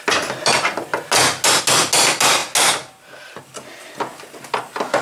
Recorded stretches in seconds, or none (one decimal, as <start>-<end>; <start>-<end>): 0.0-5.0